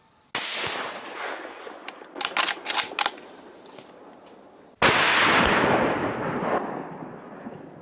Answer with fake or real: real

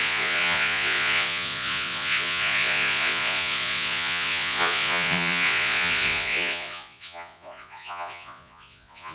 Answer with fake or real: fake